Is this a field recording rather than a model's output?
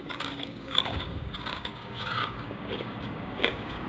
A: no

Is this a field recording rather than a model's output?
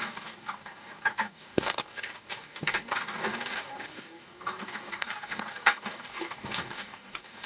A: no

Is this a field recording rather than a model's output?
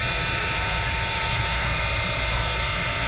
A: yes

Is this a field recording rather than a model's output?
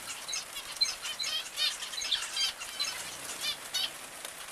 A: yes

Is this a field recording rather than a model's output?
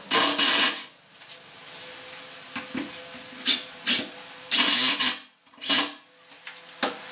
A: yes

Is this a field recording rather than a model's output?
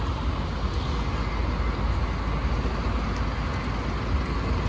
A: yes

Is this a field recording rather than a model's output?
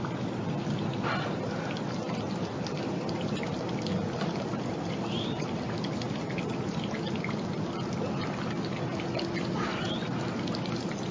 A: yes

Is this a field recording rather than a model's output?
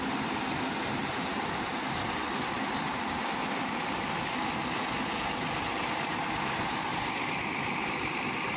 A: yes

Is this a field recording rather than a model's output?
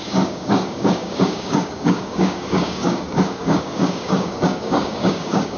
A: no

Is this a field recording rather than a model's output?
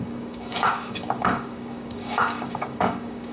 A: no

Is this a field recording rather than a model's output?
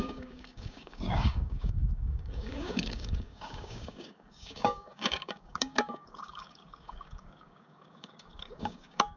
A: no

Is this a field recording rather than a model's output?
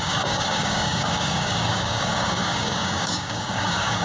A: no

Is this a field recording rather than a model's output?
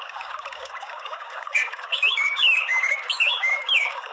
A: no